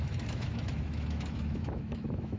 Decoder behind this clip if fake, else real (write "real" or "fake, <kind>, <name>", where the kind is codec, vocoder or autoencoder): fake, autoencoder, DAC-VAE